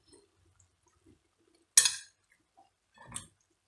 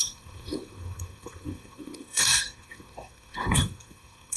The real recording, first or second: first